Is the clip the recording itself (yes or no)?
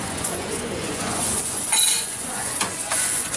no